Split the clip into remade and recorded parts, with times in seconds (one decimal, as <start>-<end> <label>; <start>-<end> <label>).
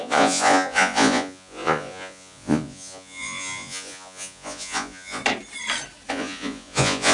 0.0-5.2 remade; 5.2-6.1 recorded; 6.1-7.1 remade